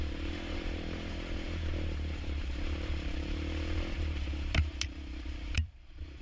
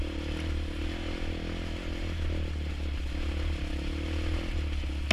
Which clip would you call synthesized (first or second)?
first